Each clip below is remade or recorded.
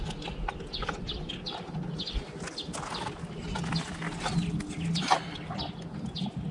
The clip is recorded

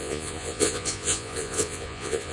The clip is remade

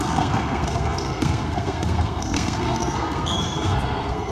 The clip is remade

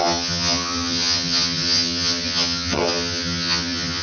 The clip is remade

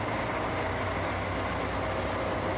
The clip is recorded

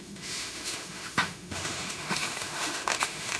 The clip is remade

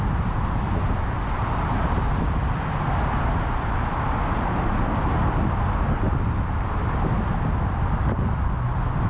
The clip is recorded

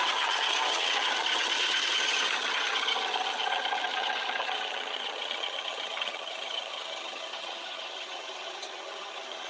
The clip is remade